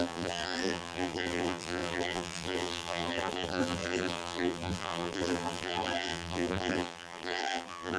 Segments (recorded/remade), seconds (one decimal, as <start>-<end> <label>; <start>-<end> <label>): 0.0-8.0 remade